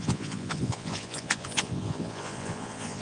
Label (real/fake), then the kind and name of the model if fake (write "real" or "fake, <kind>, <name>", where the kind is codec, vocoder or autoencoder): fake, vocoder, Vocos